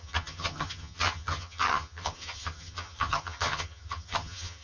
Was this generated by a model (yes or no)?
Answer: yes